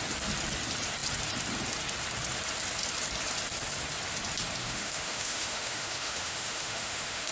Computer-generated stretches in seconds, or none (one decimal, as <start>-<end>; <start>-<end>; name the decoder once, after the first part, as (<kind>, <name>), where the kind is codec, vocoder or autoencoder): 4.6-7.3 (autoencoder, DAC-VAE)